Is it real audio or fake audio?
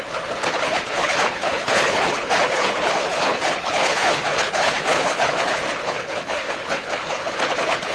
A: fake